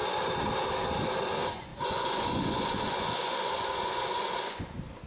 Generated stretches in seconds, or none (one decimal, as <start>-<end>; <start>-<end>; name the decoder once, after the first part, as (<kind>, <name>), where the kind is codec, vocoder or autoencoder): 1.0-5.1 (vocoder, Vocos)